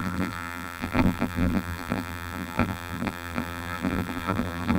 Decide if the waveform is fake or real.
fake